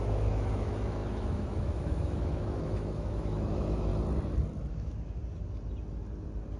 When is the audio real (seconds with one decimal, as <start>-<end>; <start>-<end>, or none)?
3.9-4.7; 5.2-6.6